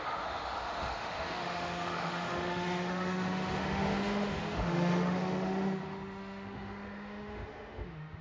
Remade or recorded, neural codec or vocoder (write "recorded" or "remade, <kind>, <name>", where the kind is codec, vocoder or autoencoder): remade, autoencoder, DAC-VAE